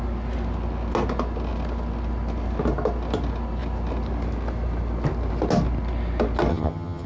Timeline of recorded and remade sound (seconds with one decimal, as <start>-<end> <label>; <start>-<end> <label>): 0.0-6.5 recorded; 6.5-7.1 remade